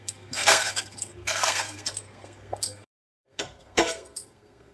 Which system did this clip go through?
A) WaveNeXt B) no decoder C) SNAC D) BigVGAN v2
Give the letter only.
C